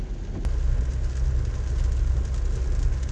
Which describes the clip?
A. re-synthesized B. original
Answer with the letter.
B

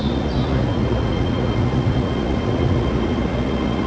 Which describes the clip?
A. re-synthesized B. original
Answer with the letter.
A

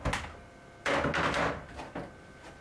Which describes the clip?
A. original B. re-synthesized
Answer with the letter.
A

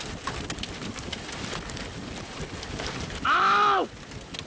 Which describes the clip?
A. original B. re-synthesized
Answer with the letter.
A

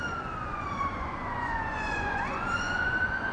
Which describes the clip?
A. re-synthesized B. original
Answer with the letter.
A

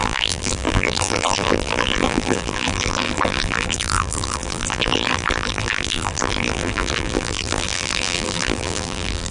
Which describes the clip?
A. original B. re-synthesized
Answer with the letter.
B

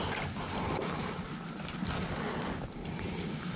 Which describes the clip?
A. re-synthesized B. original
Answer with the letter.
B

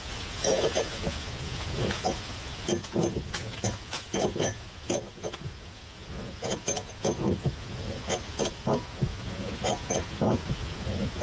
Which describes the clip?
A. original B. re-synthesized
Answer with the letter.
B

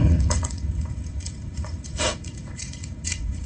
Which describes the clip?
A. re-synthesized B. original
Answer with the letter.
A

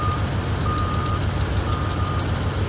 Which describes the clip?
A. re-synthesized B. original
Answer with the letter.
B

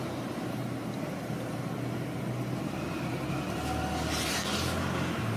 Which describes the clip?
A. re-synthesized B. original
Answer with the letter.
B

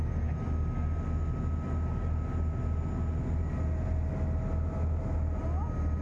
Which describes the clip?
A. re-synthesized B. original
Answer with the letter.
B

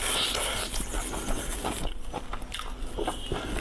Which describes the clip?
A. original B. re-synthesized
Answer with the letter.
A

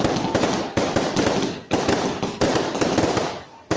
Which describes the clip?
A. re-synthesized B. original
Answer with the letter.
B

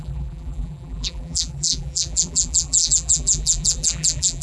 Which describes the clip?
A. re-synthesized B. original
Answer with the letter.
A